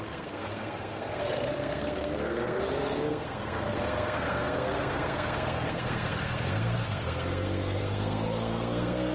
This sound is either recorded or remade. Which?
remade